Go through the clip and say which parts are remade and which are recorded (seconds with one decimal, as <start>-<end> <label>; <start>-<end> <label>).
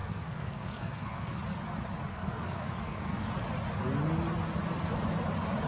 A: 0.0-1.4 remade; 1.4-2.1 recorded; 2.1-3.3 remade; 3.3-5.7 recorded